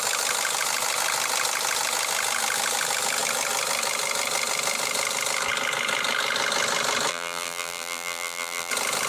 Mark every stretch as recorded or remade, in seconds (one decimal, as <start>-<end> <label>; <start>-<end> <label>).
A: 0.0-7.1 recorded; 7.1-8.7 remade; 8.7-9.1 recorded